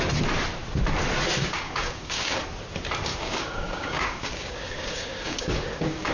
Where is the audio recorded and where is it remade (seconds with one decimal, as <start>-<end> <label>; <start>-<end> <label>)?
0.0-1.4 recorded; 1.4-2.4 remade; 2.4-3.1 recorded; 3.1-6.1 remade